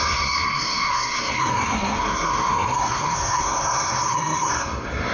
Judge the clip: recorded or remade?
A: remade